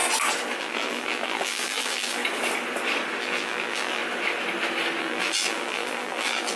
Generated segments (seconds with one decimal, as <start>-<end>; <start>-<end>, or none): 0.6-2.2; 3.2-4.0; 5.0-6.6

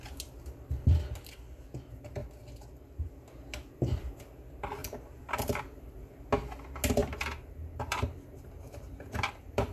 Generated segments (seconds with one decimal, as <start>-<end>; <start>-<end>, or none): 4.8-6.1; 7.0-9.7

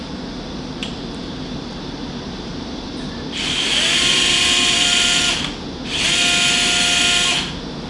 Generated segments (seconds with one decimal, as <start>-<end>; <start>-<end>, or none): 0.8-5.2

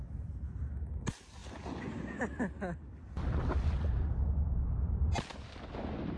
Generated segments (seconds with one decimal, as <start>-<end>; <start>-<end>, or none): none

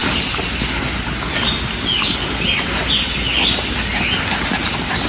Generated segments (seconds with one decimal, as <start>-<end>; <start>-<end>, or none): none

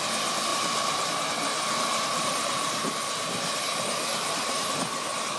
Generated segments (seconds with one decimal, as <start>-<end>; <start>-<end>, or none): 0.5-1.1; 1.5-4.7